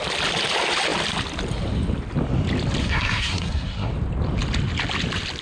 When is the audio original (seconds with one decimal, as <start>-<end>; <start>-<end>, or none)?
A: 0.0-2.8; 3.9-5.4

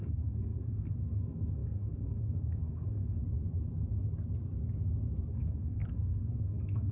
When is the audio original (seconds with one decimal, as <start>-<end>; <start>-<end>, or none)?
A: 3.2-5.3

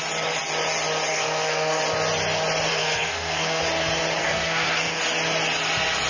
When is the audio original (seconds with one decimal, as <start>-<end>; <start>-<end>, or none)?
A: 0.0-1.1; 1.8-2.7; 3.6-4.2; 5.0-6.1

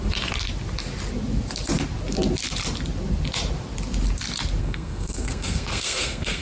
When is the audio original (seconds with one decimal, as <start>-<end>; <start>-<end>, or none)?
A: 0.0-4.6

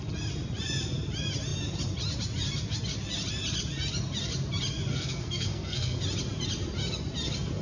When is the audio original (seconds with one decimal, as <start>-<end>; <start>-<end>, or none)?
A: 0.0-4.9; 6.0-7.6